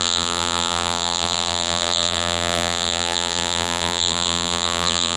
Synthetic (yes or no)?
yes